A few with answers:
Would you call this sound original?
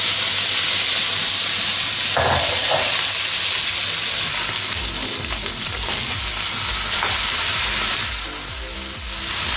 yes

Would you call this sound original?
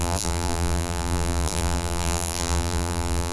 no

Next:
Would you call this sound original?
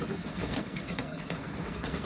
no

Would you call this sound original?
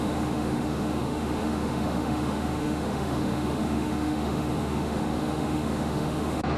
no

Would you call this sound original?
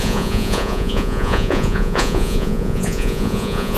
no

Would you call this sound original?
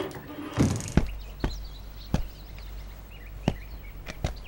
yes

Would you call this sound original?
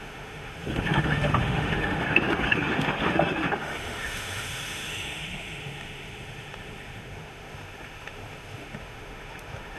no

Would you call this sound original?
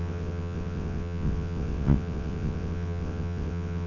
no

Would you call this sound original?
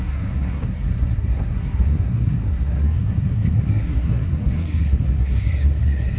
no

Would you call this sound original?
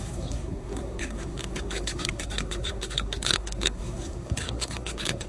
no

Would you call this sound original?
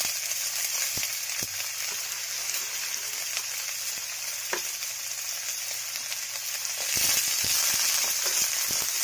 yes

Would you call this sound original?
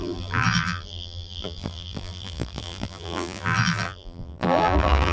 no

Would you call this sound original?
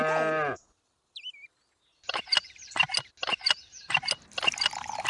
yes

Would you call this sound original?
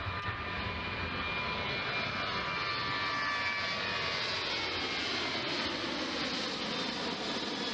yes